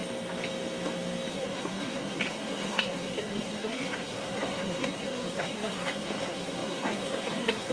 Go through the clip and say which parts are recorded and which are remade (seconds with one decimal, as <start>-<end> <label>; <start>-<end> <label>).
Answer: 0.0-1.3 recorded; 1.3-7.7 remade

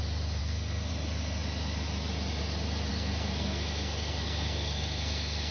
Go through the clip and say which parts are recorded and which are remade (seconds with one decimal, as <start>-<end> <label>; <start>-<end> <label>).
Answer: 0.0-0.4 recorded; 0.4-0.9 remade; 0.9-2.9 recorded; 2.9-5.5 remade

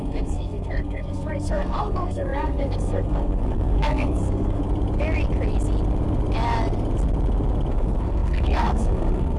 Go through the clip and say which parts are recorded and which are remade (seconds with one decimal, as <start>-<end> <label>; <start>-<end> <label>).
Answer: 0.0-4.6 remade; 4.6-7.7 recorded; 7.7-9.4 remade

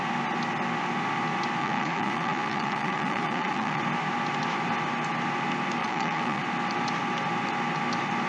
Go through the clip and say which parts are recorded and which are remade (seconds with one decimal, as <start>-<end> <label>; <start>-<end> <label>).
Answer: 0.0-1.6 recorded; 1.6-3.8 remade; 3.8-5.8 recorded; 5.8-6.4 remade; 6.4-8.3 recorded

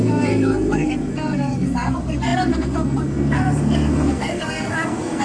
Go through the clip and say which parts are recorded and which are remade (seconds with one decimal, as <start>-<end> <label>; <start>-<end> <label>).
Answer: 0.0-5.2 remade

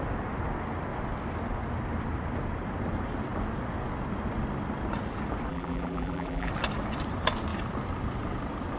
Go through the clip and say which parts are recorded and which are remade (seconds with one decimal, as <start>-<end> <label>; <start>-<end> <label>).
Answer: 0.0-5.5 recorded; 5.5-6.5 remade; 6.5-8.8 recorded

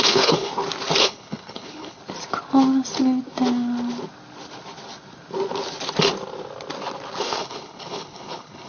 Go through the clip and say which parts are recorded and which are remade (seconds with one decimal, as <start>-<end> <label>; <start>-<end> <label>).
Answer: 0.0-0.5 remade; 0.5-1.0 recorded; 1.0-2.0 remade; 2.0-7.2 recorded; 7.2-8.7 remade